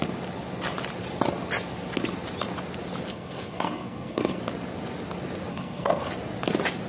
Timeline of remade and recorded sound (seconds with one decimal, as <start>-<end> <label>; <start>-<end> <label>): 0.0-3.1 recorded; 3.1-4.4 remade; 4.4-5.5 recorded; 5.5-6.1 remade; 6.1-6.9 recorded